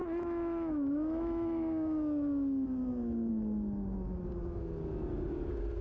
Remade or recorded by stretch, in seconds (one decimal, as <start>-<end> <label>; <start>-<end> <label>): 0.0-3.3 remade; 3.3-5.8 recorded